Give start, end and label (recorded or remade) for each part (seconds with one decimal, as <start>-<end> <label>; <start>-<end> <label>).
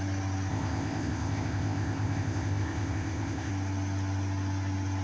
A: 0.0-0.5 recorded; 0.5-3.5 remade; 3.5-5.0 recorded